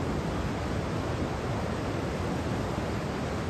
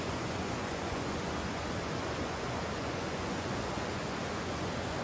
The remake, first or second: second